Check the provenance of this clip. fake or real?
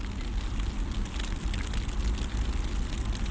real